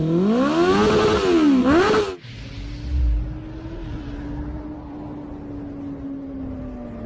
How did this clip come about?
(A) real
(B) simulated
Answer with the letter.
A